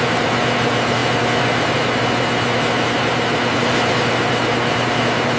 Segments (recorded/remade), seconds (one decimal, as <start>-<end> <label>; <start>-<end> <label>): 0.0-5.4 recorded